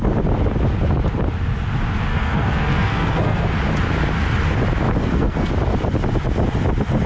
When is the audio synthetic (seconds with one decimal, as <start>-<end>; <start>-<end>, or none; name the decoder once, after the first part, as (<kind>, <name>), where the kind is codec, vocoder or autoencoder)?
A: 2.1-3.5 (codec, SNAC); 5.0-5.5